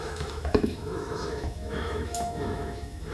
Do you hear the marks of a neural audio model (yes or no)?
yes